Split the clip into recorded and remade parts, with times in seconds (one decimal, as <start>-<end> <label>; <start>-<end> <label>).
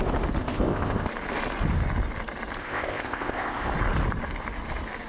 0.0-0.4 recorded; 0.4-1.1 remade; 1.1-2.6 recorded; 2.6-3.7 remade; 3.7-5.1 recorded